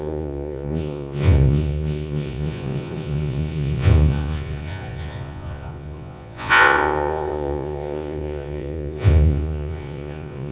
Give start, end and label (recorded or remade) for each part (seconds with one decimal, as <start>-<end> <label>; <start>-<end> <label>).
0.0-10.5 remade